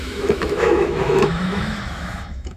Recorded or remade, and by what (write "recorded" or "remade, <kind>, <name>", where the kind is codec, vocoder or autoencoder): remade, autoencoder, DAC-VAE